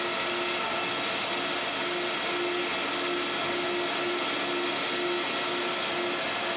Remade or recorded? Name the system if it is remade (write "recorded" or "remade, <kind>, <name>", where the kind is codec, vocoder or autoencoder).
recorded